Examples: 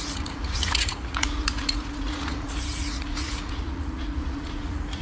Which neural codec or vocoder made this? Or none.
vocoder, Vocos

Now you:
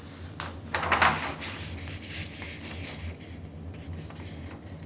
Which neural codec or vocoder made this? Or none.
none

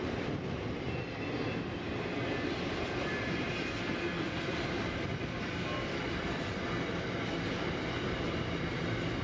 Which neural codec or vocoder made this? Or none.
none